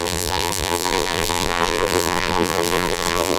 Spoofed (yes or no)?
yes